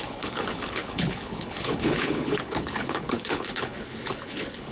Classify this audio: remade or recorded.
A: remade